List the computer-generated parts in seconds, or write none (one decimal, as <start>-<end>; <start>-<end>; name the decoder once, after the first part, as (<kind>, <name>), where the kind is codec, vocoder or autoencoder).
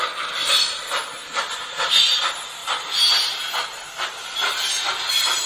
0.4-2.0 (vocoder, BigVGAN v2)